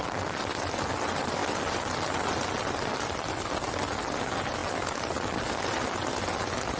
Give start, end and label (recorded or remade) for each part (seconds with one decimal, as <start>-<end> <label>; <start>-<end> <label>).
0.0-6.8 recorded